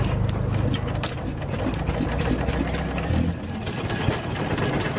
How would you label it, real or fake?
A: real